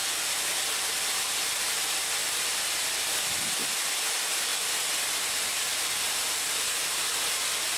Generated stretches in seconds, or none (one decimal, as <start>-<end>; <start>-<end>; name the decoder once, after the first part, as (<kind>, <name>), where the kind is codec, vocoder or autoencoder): 0.0-1.4 (vocoder, BigVGAN v2); 2.2-3.1; 5.7-6.9